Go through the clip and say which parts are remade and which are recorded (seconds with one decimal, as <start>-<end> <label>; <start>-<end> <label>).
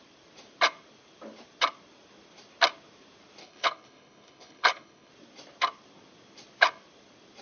0.0-3.4 recorded; 3.4-5.1 remade; 5.1-7.4 recorded